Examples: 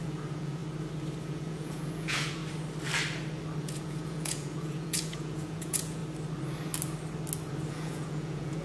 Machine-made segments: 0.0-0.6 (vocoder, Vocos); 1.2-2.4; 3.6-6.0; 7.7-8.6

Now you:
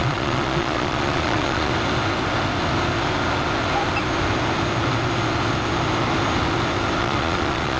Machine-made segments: 0.0-1.7 (vocoder, Vocos); 7.0-7.8

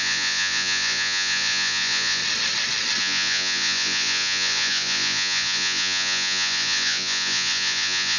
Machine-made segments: 0.0-2.2 (vocoder, Vocos); 3.0-8.2